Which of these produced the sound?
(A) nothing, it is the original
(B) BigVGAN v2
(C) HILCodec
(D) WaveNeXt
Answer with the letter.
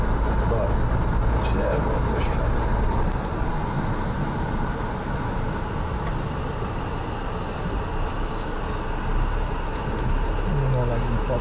A